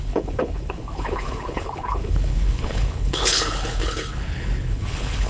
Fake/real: fake